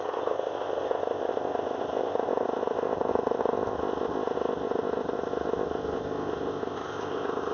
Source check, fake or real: fake